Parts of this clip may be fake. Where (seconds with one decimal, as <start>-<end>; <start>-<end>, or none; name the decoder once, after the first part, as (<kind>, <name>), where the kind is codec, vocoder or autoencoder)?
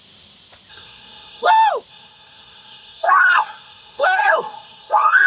0.7-1.5 (codec, SNAC); 1.9-5.3